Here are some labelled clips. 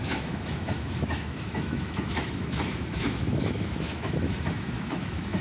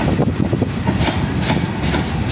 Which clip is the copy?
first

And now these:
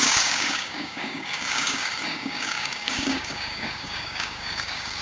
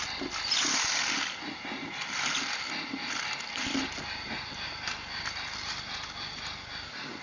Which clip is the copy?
first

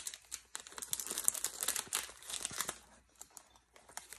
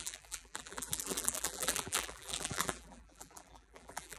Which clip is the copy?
second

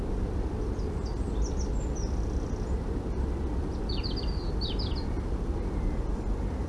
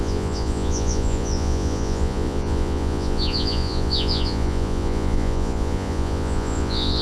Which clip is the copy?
second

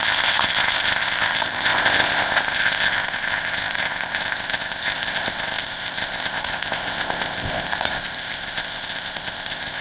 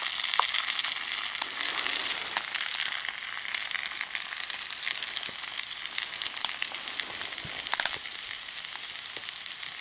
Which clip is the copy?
first